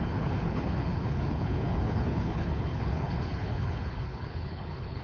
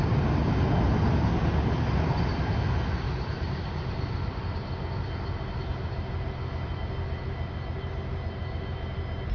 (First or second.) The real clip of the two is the second